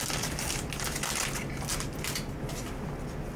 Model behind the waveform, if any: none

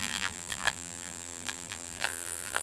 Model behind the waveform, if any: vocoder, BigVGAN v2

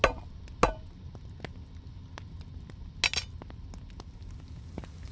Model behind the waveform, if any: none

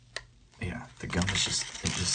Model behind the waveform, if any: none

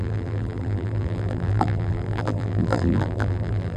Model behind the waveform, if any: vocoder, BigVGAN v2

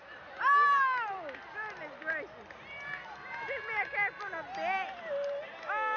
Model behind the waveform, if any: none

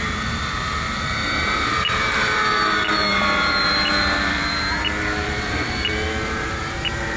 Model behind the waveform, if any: vocoder, BigVGAN v2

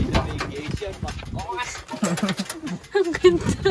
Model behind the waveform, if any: none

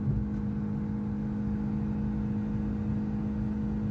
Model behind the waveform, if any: none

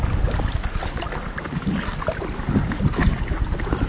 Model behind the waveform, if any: none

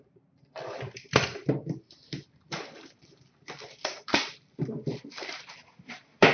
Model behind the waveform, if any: vocoder, BigVGAN v2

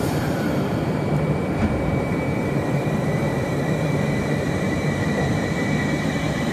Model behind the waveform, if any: vocoder, BigVGAN v2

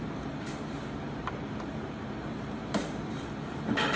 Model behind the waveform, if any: vocoder, BigVGAN v2